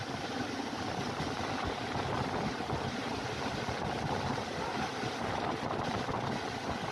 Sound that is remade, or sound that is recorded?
recorded